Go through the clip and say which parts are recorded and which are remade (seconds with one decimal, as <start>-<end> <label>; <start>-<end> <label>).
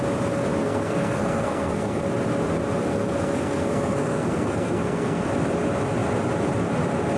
0.0-0.6 recorded; 0.6-2.0 remade; 2.0-2.9 recorded; 2.9-5.3 remade; 5.3-7.2 recorded